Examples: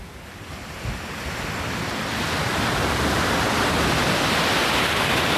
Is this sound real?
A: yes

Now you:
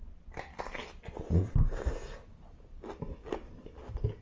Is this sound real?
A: yes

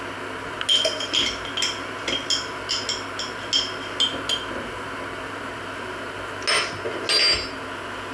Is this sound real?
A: yes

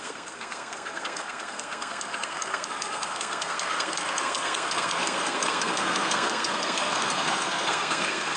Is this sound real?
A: no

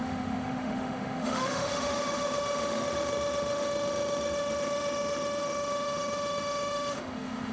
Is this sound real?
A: no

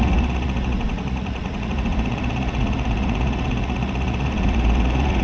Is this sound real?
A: no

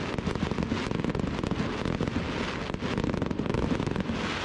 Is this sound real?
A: yes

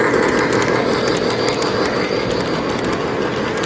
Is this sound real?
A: yes